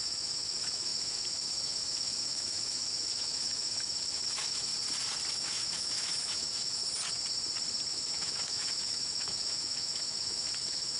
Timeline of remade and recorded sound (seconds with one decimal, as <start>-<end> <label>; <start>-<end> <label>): 0.0-4.7 remade; 4.7-5.3 recorded; 5.3-6.8 remade; 6.8-7.9 recorded; 7.9-11.0 remade

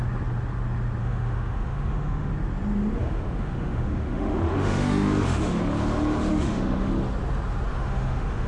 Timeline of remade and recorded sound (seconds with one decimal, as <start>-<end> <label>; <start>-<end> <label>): 0.0-1.0 recorded; 1.0-2.3 remade; 2.3-3.0 recorded; 3.0-5.6 remade; 5.6-6.3 recorded; 6.3-6.9 remade; 6.9-7.7 recorded; 7.7-8.5 remade